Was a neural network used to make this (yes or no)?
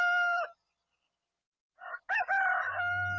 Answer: no